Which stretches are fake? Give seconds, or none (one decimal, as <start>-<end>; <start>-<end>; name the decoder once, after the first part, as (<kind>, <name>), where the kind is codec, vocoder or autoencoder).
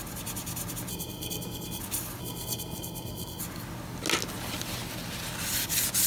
0.9-1.8 (codec, SNAC); 2.2-3.4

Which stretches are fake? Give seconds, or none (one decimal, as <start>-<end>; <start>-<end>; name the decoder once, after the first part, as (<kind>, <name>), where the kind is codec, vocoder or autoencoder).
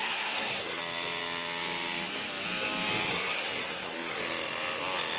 0.0-0.8 (codec, SNAC); 3.1-4.2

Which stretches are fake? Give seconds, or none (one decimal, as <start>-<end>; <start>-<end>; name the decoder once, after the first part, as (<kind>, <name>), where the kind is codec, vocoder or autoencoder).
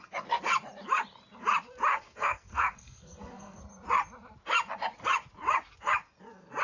1.9-3.6 (codec, SNAC)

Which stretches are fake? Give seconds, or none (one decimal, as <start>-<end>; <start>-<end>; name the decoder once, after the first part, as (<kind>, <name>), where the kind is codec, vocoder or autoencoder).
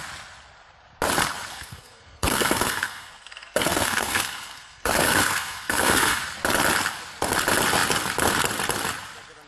1.5-6.2 (codec, SNAC)